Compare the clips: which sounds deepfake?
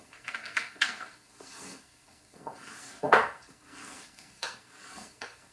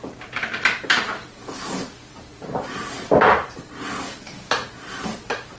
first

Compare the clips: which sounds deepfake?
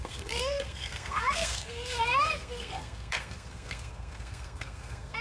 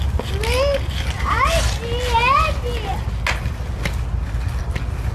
first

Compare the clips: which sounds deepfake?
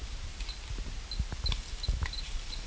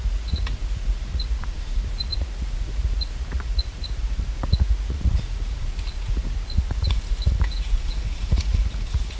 second